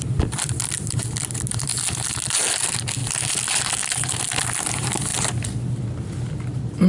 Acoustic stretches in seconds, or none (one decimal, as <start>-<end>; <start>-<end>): 0.0-6.9